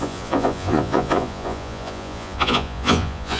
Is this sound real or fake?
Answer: fake